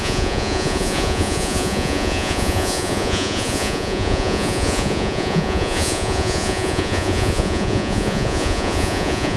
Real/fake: fake